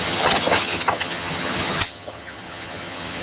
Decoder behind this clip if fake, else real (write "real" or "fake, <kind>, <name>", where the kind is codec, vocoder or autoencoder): fake, vocoder, HiFi-GAN